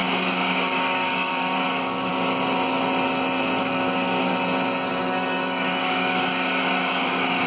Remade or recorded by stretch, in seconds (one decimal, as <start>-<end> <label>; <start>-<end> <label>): 0.0-2.1 remade; 2.1-3.6 recorded; 3.6-4.3 remade; 4.3-4.9 recorded; 4.9-7.5 remade